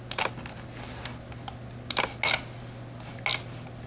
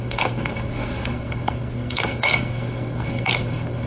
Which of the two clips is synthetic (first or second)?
second